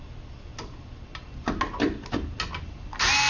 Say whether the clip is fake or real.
real